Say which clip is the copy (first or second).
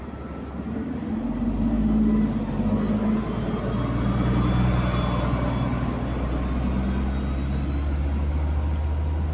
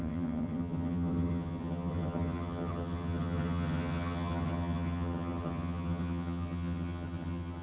second